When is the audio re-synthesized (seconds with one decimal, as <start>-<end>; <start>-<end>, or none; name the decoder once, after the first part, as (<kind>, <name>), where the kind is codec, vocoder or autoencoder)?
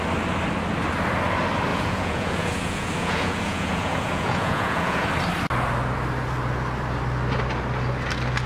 1.7-5.1 (vocoder, Vocos)